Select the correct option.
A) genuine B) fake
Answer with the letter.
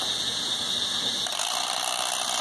A